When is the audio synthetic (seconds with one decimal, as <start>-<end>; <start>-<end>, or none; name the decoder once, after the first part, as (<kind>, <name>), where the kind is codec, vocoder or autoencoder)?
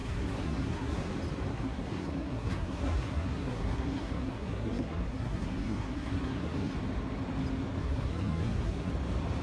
0.0-1.1 (codec, SNAC); 1.5-6.7; 7.8-8.9